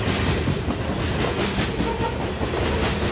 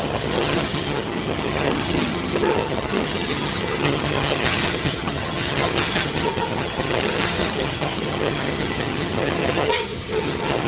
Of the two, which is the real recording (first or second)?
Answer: first